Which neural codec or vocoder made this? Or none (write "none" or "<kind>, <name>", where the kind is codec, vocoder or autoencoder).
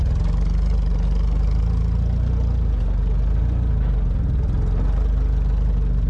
none